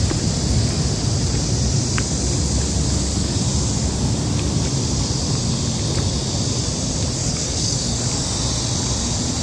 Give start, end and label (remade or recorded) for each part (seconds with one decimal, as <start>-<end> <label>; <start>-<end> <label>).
0.0-7.2 recorded; 7.2-8.0 remade; 8.0-9.4 recorded